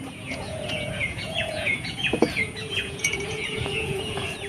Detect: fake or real fake